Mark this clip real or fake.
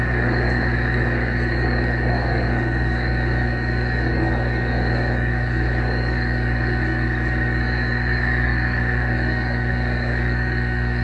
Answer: fake